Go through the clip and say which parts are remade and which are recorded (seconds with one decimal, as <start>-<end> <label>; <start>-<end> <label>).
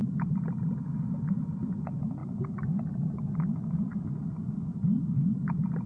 0.0-5.9 recorded